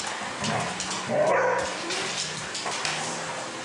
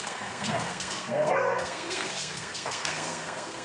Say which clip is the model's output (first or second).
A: second